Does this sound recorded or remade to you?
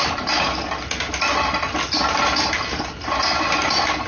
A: recorded